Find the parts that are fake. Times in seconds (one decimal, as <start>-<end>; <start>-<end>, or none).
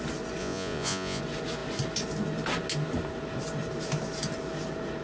0.4-1.2